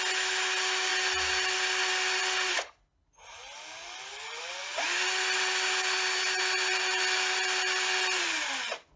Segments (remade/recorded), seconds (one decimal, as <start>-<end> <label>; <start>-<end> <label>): 0.0-9.0 recorded